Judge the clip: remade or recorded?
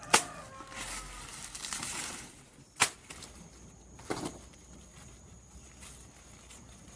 recorded